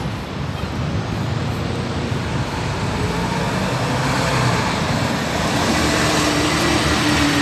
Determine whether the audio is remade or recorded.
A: recorded